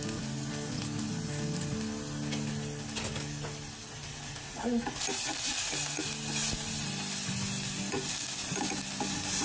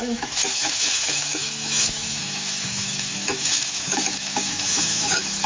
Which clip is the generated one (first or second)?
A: second